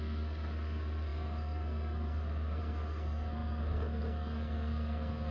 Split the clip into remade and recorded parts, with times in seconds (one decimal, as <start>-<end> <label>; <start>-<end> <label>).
0.0-5.3 remade